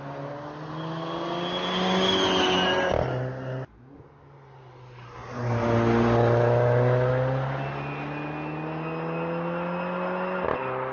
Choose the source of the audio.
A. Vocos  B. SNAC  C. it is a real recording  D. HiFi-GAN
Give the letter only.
C